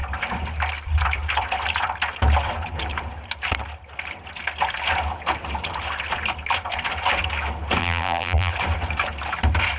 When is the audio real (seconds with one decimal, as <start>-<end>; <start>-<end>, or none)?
0.0-7.8; 8.5-9.8